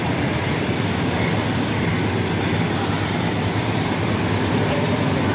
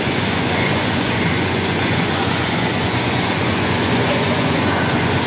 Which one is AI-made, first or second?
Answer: second